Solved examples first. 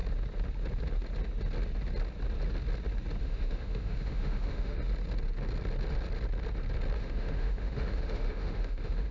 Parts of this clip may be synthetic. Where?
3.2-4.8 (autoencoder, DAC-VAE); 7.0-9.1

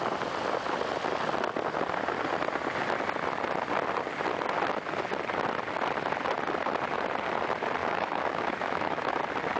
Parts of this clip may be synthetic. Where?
7.8-9.2 (autoencoder, DAC-VAE)

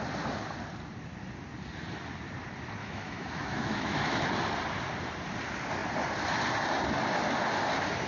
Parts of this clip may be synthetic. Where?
2.8-4.2 (autoencoder, DAC-VAE)

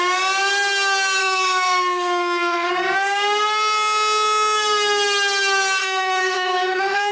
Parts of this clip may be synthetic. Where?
1.2-2.7 (autoencoder, DAC-VAE); 5.8-7.1

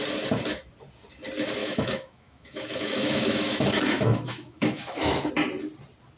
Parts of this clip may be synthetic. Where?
1.6-5.3 (autoencoder, DAC-VAE)